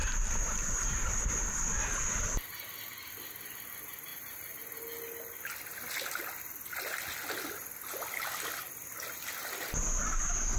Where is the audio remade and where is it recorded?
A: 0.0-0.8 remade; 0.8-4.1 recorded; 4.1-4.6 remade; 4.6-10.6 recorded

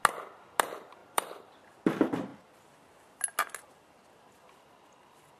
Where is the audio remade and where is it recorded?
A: 0.0-1.0 recorded; 1.0-1.5 remade; 1.5-5.4 recorded

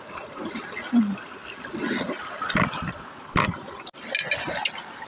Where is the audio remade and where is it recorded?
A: 0.0-5.1 recorded